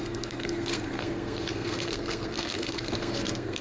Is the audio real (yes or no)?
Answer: no